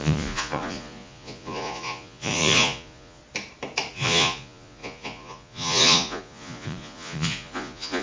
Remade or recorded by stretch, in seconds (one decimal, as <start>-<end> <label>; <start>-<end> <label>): 0.0-3.2 remade; 3.2-3.9 recorded; 3.9-8.0 remade